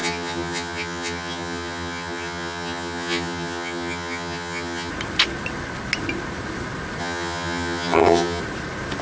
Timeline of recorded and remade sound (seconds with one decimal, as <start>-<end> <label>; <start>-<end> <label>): 0.0-4.9 remade; 4.9-7.0 recorded; 7.0-8.4 remade; 8.4-9.0 recorded